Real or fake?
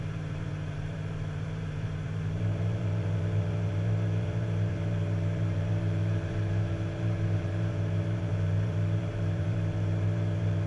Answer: fake